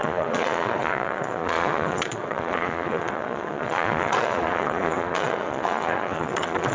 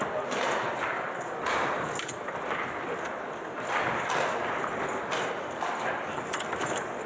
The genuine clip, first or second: second